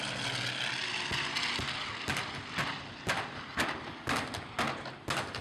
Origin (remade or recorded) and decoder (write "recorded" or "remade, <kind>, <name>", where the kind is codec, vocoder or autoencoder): recorded